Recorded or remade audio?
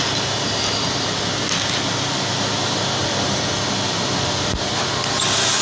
recorded